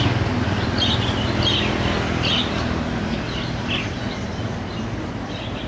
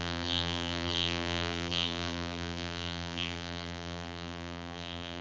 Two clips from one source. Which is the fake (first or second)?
second